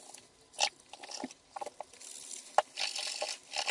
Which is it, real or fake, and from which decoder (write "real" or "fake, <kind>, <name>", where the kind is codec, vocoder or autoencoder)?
real